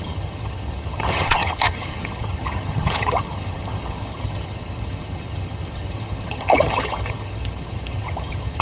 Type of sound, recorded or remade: remade